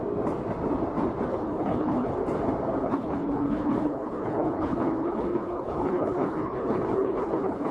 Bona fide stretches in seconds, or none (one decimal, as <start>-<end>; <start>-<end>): 0.0-1.3; 2.1-2.8